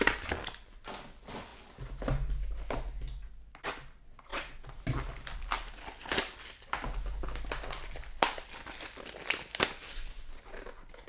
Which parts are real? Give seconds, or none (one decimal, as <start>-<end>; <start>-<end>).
0.0-11.1